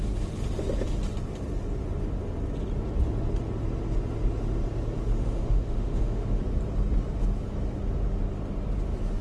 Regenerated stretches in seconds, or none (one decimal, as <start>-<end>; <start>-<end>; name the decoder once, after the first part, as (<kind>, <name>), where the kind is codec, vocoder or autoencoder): 5.2-6.4 (autoencoder, DAC-VAE)